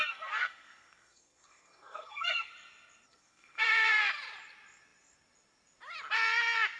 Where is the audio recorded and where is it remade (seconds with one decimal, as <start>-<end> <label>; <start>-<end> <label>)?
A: 0.0-2.5 remade; 2.5-3.1 recorded; 3.1-4.0 remade; 4.0-6.8 recorded